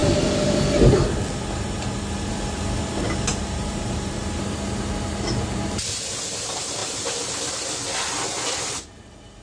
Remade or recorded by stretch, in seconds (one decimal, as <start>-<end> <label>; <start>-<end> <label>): 0.0-3.3 recorded; 3.3-4.2 remade; 4.2-9.4 recorded